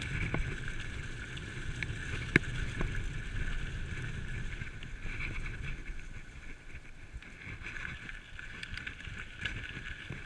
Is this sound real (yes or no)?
yes